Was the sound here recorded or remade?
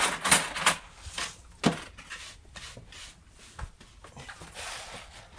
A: recorded